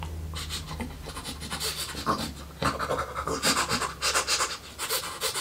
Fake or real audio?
fake